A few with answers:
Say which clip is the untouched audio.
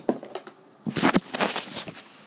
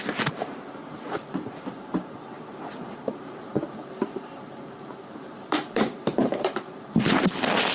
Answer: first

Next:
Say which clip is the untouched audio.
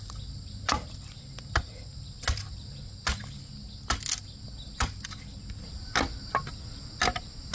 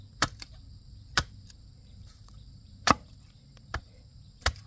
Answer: first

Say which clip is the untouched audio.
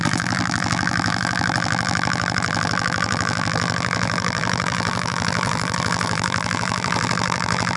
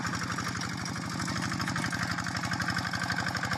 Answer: second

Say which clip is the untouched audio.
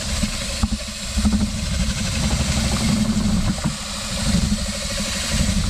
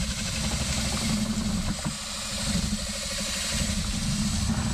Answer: second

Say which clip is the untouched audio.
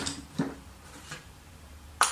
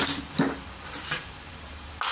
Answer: second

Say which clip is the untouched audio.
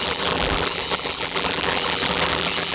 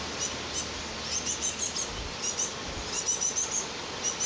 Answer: second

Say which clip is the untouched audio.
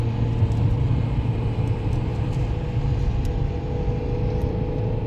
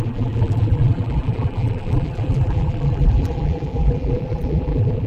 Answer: first